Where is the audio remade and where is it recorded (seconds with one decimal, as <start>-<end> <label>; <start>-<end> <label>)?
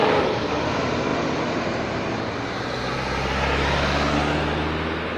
0.0-0.6 remade; 0.6-5.2 recorded